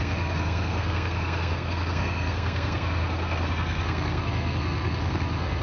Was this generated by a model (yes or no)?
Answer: yes